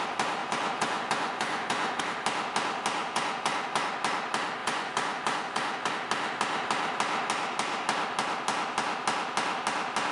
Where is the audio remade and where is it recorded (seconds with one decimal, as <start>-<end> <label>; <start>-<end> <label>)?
0.0-0.4 recorded; 0.4-2.0 remade; 2.0-3.0 recorded; 3.0-3.9 remade; 3.9-4.6 recorded; 4.6-5.9 remade; 5.9-10.1 recorded